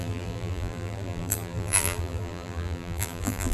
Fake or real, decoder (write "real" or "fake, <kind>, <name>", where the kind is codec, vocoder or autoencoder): fake, vocoder, BigVGAN v2